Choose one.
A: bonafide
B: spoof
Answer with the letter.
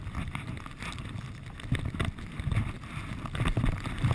A